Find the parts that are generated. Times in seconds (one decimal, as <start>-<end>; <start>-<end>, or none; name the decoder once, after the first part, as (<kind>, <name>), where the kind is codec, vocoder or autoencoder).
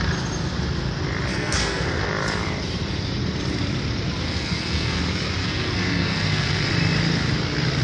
1.3-2.1 (codec, SNAC); 4.3-5.0; 5.4-6.7